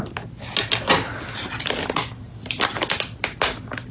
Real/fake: real